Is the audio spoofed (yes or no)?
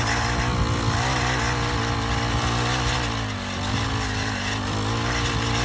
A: no